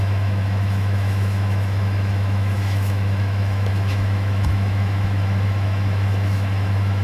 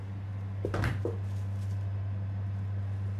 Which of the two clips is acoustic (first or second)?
second